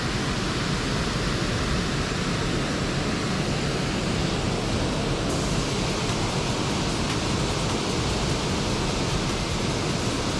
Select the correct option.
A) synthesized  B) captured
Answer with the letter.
B